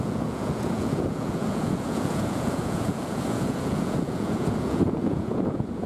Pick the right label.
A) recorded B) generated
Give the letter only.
B